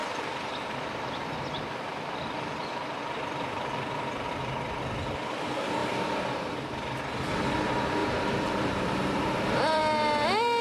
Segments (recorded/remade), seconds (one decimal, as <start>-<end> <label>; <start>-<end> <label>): 0.0-4.3 remade; 4.3-5.8 recorded; 5.8-7.3 remade; 7.3-8.0 recorded; 8.0-9.8 remade; 9.8-10.6 recorded